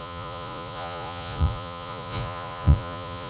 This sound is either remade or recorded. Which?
remade